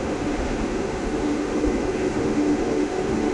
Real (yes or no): no